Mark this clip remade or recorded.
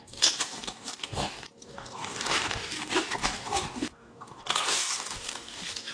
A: remade